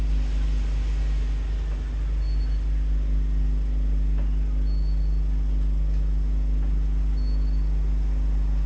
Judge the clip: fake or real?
real